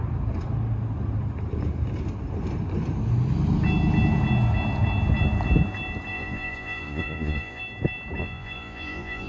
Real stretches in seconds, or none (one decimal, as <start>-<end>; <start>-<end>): 0.0-6.1; 7.6-8.2